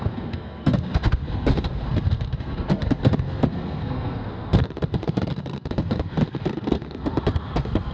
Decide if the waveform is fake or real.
fake